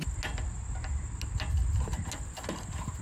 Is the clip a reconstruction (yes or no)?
no